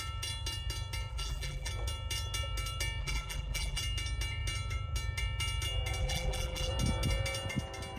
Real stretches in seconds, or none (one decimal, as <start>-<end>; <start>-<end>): 0.0-1.1; 1.7-3.0; 3.8-6.0; 6.7-8.0